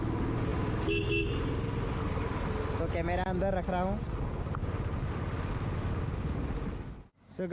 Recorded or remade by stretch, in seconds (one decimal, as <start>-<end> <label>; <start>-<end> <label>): 0.0-7.5 recorded